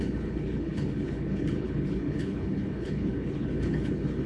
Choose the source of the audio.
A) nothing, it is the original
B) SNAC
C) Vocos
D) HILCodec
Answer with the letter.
D